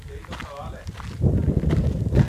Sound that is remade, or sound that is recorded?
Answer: recorded